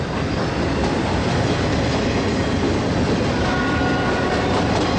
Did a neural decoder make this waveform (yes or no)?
no